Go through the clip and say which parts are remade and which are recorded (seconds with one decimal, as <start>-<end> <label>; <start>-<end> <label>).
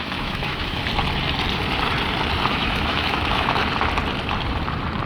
0.0-0.8 remade; 0.8-2.5 recorded; 2.5-3.6 remade; 3.6-5.1 recorded